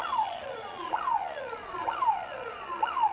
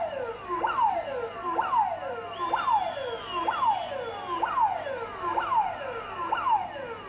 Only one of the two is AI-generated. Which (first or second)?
first